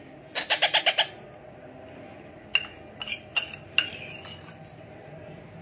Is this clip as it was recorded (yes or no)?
yes